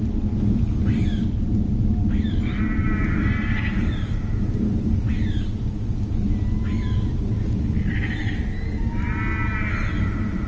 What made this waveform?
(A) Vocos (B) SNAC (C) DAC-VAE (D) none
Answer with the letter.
D